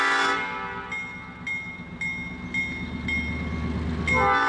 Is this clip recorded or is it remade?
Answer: recorded